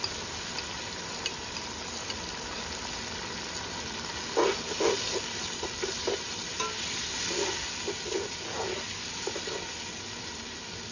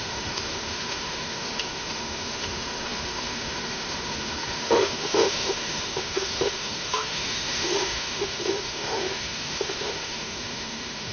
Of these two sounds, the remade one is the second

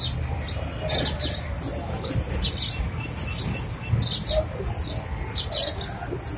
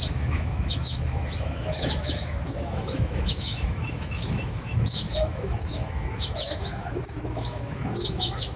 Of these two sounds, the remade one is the second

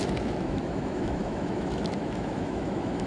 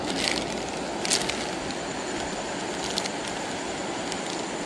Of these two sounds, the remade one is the first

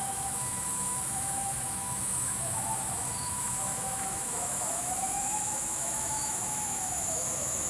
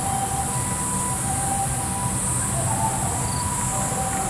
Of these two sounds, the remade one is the first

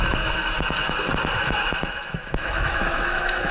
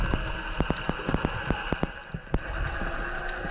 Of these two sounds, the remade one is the first